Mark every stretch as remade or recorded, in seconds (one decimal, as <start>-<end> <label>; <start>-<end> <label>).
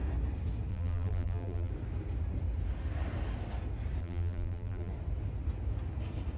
0.0-0.7 recorded; 0.7-1.7 remade; 1.7-4.0 recorded; 4.0-4.9 remade; 4.9-6.4 recorded